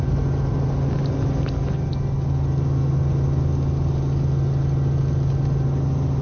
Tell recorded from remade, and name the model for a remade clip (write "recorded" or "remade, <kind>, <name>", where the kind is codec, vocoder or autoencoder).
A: recorded